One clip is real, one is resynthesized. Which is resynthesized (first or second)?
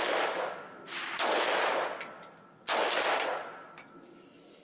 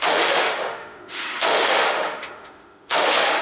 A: second